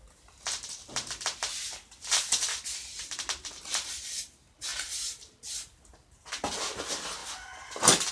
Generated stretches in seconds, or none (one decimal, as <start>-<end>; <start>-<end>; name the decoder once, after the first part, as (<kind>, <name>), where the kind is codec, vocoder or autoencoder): none